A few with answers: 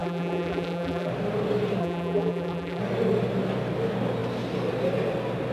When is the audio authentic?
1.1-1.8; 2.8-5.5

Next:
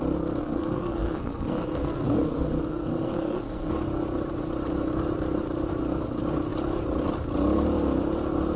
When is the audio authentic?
0.0-0.4; 3.7-8.6

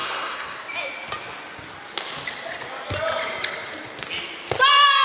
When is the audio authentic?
0.6-5.0

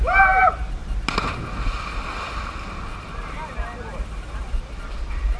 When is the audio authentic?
0.0-5.4

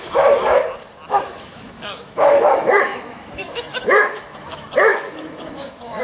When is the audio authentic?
0.6-1.1

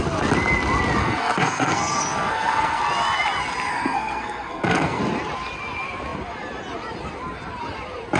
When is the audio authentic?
0.0-1.0; 2.8-3.7; 5.0-8.2

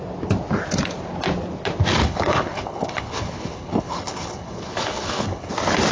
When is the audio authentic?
0.0-2.0; 5.5-5.9